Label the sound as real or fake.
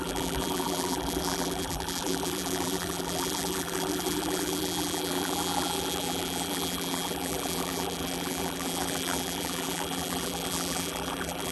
fake